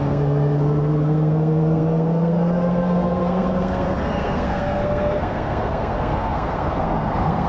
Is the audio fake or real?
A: fake